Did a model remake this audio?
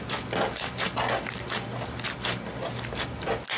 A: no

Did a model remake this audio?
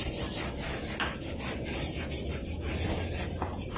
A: no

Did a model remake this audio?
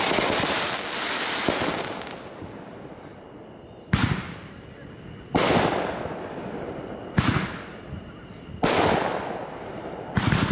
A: no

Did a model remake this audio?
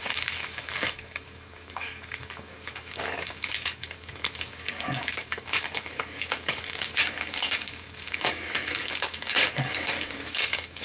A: yes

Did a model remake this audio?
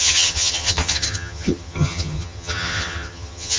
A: yes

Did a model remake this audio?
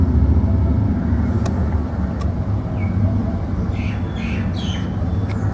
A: no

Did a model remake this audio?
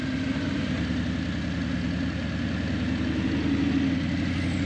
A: no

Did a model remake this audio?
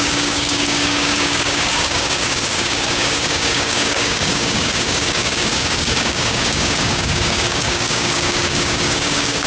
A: yes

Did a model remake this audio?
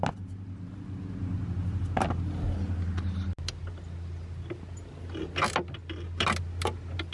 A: no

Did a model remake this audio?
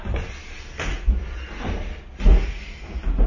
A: no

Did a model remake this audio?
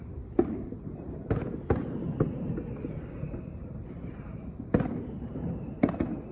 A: no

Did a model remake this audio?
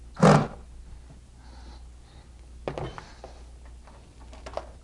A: no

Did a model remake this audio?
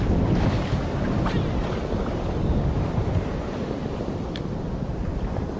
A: no